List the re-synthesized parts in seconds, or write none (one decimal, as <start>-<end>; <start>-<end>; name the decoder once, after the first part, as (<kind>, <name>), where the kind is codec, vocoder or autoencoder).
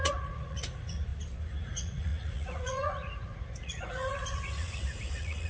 0.0-1.1 (vocoder, Vocos); 1.7-5.5